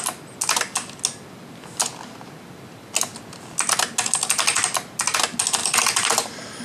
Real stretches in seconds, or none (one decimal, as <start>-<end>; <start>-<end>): 0.0-5.6